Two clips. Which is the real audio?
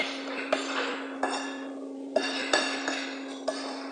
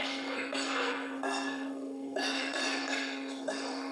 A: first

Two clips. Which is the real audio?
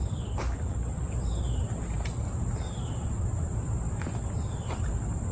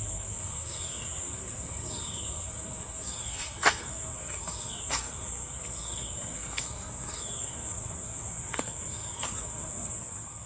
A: first